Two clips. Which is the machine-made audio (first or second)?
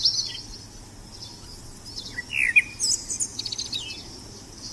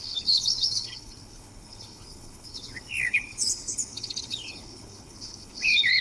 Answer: second